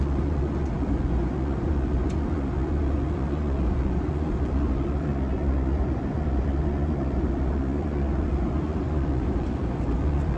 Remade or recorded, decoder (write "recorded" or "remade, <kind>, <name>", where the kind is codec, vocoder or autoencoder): remade, vocoder, Vocos